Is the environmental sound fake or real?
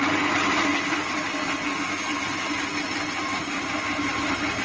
real